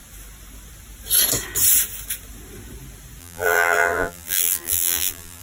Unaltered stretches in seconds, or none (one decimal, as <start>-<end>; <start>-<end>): 0.0-3.2